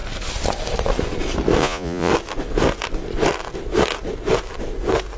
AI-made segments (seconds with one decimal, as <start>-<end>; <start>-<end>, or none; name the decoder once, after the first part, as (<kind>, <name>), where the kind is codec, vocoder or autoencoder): 1.6-2.1 (vocoder, Vocos)